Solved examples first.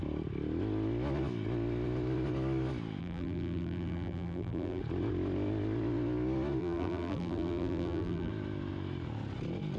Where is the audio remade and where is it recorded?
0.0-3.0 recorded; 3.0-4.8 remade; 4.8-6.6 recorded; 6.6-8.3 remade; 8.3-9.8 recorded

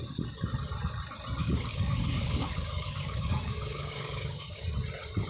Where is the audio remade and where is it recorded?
0.0-1.4 recorded; 1.4-4.6 remade; 4.6-5.3 recorded

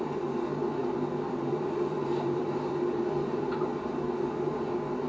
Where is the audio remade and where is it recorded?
0.0-0.8 recorded; 0.8-3.9 remade; 3.9-5.1 recorded